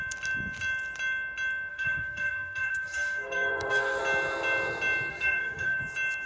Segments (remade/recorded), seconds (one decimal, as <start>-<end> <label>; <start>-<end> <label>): 0.0-1.7 recorded; 1.7-4.0 remade; 4.0-5.1 recorded; 5.1-5.8 remade; 5.8-6.3 recorded